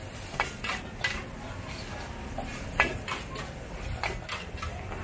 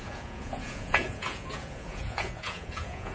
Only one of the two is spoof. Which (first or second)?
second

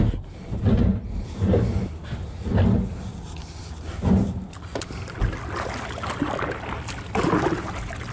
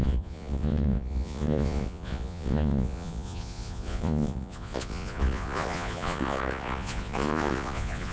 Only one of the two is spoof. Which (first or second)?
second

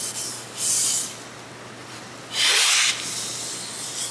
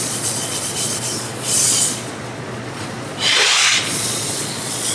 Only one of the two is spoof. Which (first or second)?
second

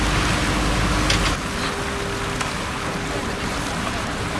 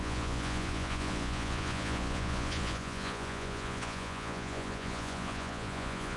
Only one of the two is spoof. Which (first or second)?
second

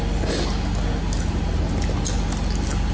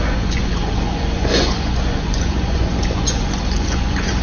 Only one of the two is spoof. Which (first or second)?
second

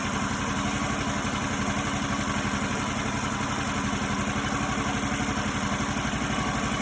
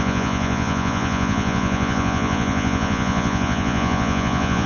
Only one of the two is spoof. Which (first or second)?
second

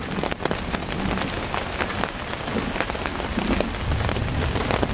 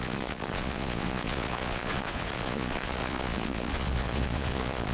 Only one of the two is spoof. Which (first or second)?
second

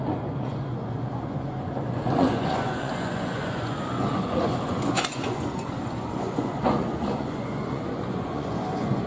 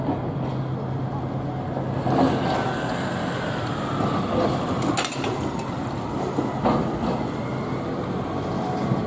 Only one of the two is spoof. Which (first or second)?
first